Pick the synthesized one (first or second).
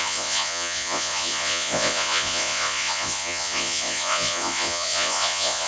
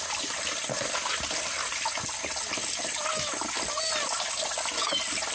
first